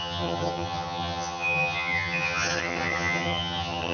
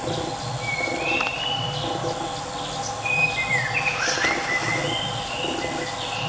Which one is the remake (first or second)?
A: first